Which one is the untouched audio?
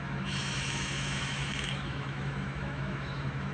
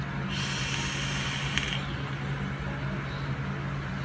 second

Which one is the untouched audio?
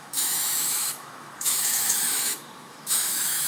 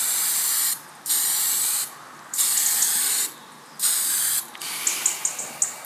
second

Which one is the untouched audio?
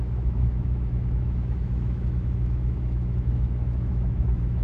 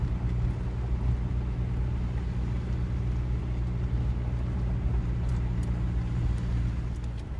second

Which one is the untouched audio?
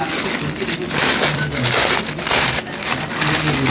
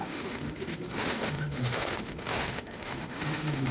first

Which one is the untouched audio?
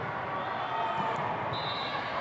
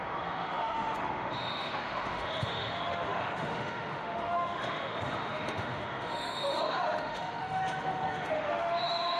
first